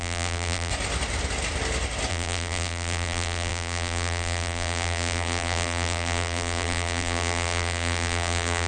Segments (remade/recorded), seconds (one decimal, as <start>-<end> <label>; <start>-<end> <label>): 0.0-0.7 remade; 0.7-2.1 recorded; 2.1-8.7 remade